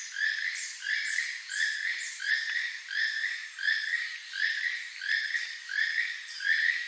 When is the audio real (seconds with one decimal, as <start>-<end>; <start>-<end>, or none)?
0.0-2.0; 3.5-6.9